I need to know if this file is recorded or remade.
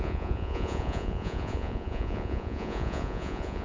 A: remade